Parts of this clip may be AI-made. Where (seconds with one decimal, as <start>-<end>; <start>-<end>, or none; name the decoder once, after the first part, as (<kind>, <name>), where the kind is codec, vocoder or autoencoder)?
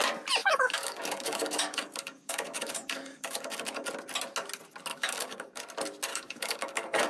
0.4-3.9 (codec, DAC); 4.9-5.6; 6.1-7.1